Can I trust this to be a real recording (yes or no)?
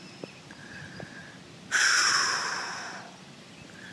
no